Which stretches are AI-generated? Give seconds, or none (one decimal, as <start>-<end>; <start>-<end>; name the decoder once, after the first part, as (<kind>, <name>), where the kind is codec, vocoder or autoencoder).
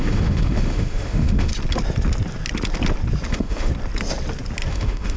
0.0-1.5 (autoencoder, DAC-VAE); 3.3-3.7; 4.7-5.2